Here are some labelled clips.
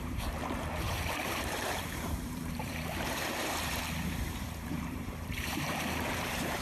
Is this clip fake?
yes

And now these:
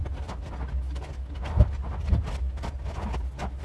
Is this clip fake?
no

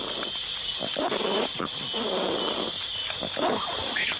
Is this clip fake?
yes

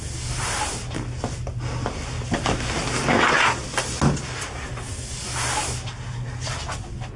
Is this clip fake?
no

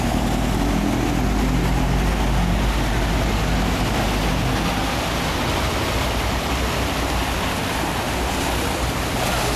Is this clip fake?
no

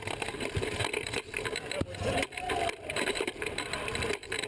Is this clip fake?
yes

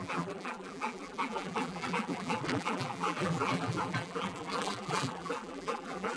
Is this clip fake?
yes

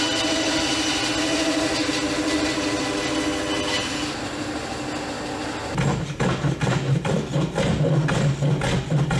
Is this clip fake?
no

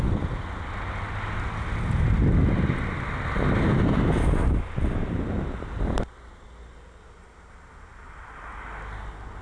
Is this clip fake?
no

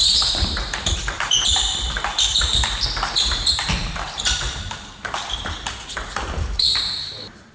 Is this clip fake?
yes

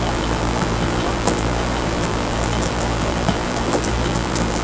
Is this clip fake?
yes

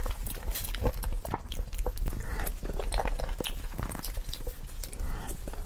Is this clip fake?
no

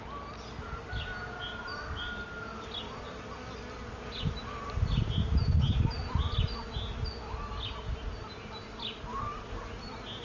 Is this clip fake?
no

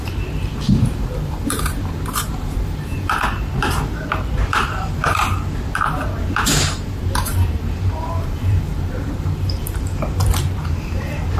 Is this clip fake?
yes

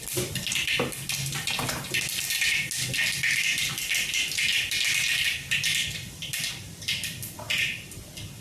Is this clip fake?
no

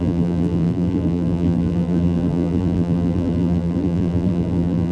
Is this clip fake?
yes